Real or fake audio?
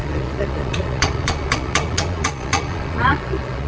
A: fake